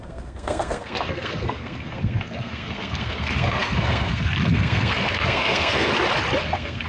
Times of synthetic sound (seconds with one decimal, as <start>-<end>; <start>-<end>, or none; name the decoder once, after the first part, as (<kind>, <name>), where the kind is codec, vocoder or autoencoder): 0.0-5.9 (codec, SNAC); 6.4-6.9